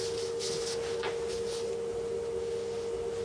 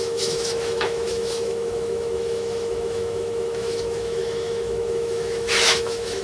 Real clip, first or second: first